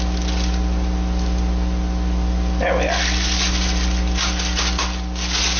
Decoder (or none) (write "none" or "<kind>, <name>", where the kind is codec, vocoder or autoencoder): none